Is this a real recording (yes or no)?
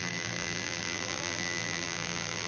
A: no